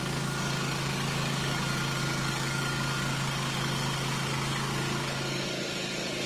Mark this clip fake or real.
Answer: fake